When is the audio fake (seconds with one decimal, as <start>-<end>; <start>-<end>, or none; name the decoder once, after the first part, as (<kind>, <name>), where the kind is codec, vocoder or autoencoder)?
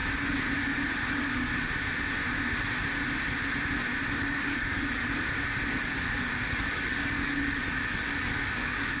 1.1-1.5 (codec, DAC); 4.1-5.0; 5.7-9.0